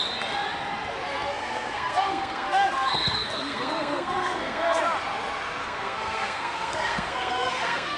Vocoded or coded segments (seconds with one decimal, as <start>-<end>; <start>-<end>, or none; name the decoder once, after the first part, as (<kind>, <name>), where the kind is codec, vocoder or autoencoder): 1.3-4.8 (codec, SNAC); 5.6-8.0